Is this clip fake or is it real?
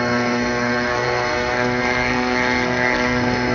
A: fake